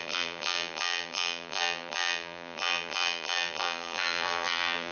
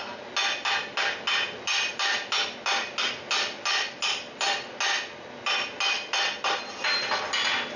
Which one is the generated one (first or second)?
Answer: first